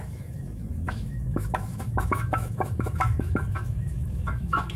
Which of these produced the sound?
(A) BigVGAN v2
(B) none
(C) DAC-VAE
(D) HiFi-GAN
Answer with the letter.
C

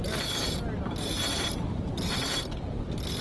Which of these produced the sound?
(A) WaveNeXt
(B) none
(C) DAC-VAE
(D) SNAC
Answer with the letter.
B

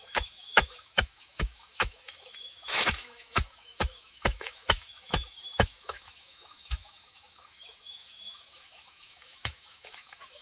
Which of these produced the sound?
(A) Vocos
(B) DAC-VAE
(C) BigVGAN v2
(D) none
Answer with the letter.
B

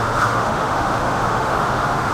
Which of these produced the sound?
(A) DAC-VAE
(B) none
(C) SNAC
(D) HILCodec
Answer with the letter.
A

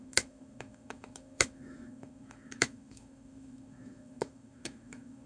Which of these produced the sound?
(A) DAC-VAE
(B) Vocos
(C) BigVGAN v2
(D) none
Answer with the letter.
A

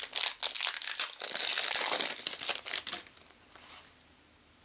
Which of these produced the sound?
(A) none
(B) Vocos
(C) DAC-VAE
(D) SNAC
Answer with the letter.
A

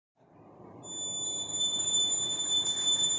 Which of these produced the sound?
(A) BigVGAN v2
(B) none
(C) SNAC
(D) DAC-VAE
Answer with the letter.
B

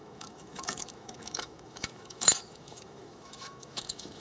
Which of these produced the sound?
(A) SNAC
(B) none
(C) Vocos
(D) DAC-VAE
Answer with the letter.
D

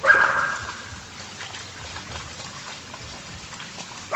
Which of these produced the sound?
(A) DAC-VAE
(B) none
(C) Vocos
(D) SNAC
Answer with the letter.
B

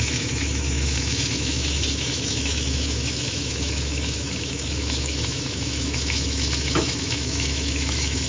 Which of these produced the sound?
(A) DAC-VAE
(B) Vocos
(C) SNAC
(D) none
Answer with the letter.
A